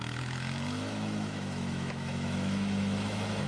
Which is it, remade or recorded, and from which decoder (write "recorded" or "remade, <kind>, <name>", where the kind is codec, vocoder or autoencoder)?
remade, autoencoder, DAC-VAE